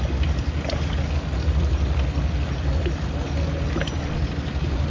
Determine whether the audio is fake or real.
real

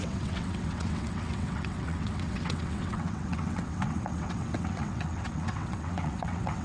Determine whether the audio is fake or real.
fake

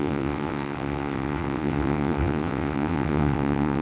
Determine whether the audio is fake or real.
fake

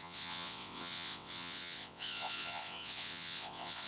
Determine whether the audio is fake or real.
fake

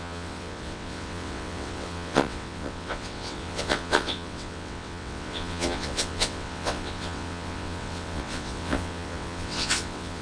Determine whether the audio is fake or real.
fake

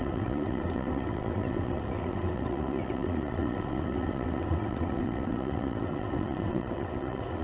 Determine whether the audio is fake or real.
fake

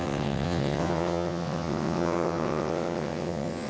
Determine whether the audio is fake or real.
fake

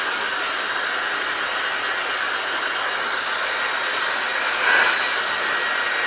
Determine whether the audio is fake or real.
real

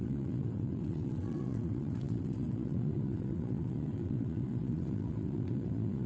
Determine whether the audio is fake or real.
fake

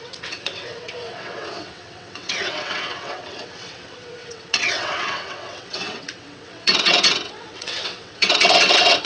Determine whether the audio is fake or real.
fake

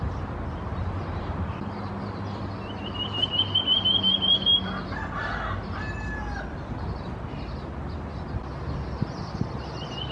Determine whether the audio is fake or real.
real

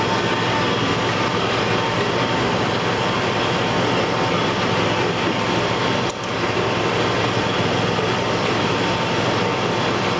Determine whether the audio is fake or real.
real